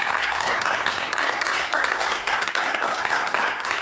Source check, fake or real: fake